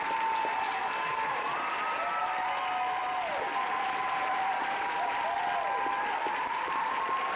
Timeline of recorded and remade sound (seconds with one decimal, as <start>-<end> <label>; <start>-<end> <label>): 0.0-7.4 recorded